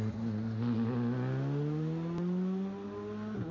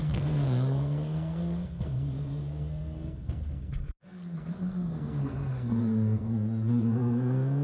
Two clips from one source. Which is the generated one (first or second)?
second